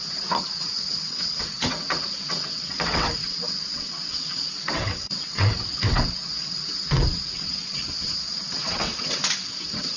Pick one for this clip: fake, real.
fake